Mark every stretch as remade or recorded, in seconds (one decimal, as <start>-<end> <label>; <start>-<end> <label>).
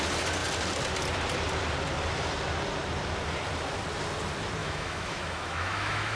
0.0-4.6 recorded; 4.6-6.2 remade